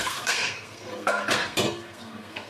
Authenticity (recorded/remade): remade